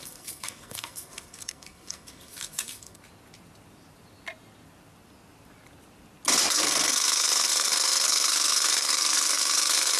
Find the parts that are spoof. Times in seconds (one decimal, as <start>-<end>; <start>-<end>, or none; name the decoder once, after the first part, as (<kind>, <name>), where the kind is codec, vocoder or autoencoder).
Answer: 0.0-3.0 (codec, SNAC); 6.5-10.0